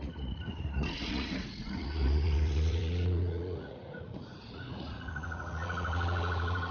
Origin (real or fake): fake